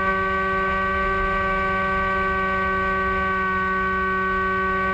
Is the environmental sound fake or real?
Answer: real